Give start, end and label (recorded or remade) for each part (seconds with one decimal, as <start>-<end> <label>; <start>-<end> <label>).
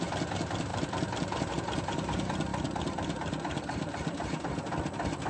0.0-0.7 recorded; 0.7-1.5 remade; 1.5-2.5 recorded; 2.5-4.4 remade; 4.4-5.3 recorded